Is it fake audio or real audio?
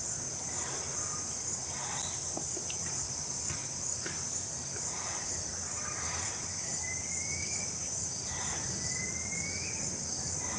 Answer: real